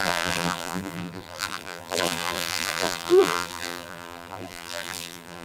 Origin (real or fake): fake